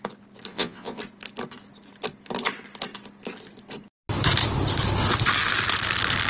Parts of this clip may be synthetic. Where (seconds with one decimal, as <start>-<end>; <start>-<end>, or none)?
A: 0.5-1.0